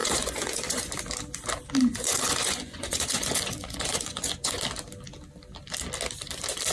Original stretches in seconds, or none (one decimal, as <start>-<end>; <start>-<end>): 0.8-1.9; 4.6-6.7